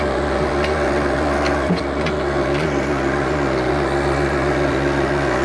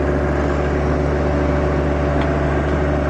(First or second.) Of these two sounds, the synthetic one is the first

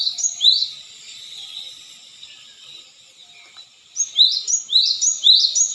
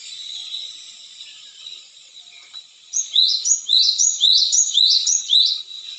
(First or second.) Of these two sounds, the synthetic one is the second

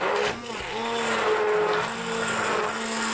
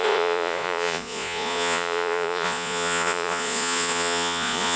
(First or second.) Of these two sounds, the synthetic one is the second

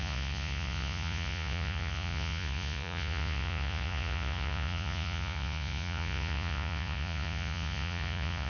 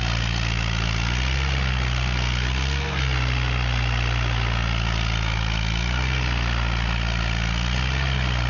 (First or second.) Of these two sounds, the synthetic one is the first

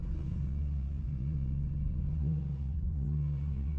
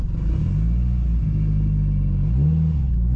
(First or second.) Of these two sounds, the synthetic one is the first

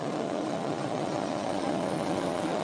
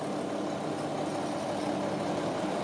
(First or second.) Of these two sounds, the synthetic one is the first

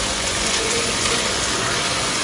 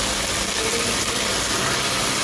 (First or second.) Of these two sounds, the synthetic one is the first